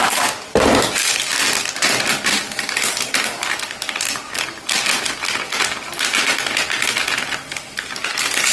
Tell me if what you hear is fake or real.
real